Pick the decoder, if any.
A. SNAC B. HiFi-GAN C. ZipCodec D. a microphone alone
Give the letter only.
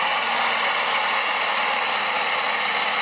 D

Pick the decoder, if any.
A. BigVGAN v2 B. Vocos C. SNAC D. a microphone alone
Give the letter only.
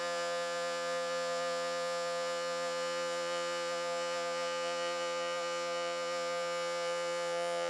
B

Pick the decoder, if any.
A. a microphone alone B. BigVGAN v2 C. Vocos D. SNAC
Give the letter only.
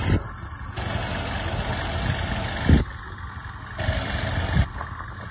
A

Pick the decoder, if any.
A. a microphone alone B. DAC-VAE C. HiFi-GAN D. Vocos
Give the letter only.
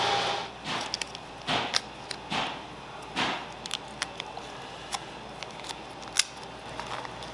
A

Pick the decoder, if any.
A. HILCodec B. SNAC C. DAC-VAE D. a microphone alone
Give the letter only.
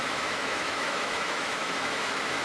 C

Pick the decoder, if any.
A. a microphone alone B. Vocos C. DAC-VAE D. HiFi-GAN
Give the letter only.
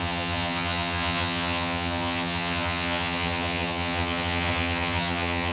D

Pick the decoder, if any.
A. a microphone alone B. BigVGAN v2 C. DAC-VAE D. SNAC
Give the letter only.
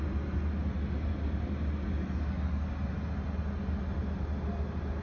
A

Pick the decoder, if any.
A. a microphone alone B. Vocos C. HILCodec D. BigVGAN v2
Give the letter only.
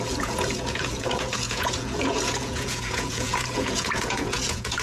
B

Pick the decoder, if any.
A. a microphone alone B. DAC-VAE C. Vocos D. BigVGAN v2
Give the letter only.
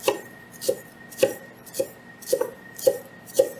A